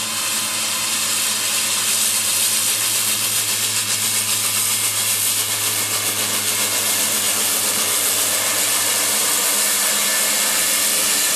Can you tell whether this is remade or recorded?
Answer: recorded